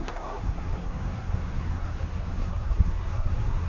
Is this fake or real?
fake